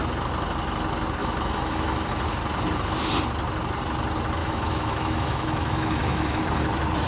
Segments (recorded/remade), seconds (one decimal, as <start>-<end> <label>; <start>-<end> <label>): 0.0-1.2 recorded; 1.2-2.1 remade; 2.1-4.4 recorded; 4.4-6.4 remade; 6.4-7.1 recorded